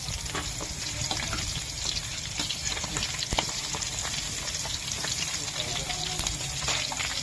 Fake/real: real